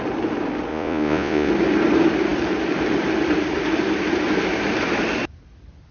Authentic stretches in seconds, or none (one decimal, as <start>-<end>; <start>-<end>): 0.0-0.7; 1.5-5.9